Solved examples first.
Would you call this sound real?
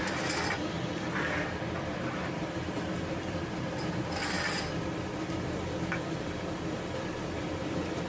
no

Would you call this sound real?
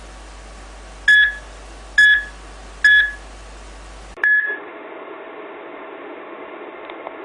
yes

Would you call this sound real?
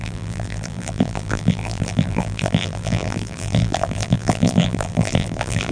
no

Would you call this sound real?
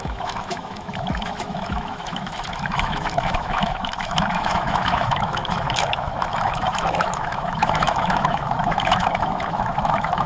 no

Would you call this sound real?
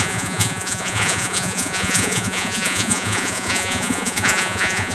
no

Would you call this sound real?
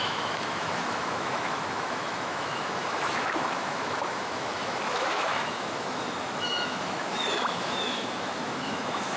no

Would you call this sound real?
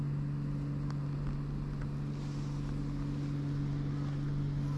yes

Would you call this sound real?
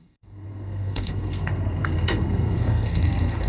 no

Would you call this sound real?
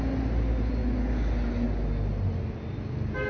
yes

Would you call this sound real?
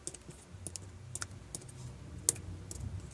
yes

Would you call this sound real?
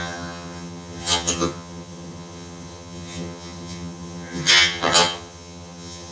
no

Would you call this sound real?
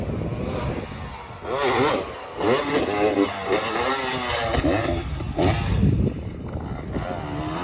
yes